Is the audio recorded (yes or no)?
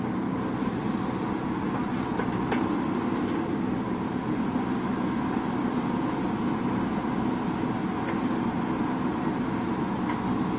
yes